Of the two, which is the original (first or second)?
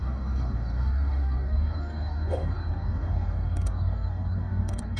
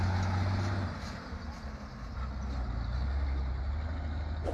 second